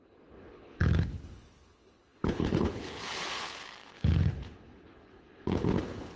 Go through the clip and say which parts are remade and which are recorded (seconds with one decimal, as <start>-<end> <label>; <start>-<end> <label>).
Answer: 0.0-6.2 remade